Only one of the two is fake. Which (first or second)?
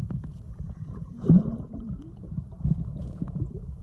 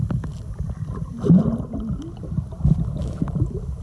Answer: first